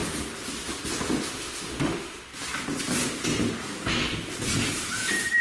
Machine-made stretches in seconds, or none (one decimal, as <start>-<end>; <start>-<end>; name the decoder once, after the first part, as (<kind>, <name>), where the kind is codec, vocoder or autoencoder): 1.3-2.3 (autoencoder, DAC-VAE)